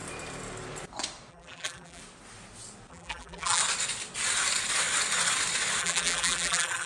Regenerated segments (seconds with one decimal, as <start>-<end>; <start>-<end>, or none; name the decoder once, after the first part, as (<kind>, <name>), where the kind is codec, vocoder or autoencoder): 1.3-2.0 (vocoder, BigVGAN v2); 2.9-3.6; 5.8-6.9